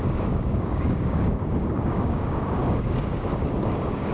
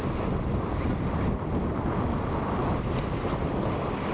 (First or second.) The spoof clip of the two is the first